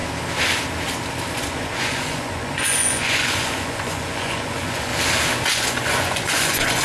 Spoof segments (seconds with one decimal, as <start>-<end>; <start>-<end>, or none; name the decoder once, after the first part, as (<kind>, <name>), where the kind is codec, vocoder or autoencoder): 1.3-4.9 (vocoder, Vocos); 5.5-6.8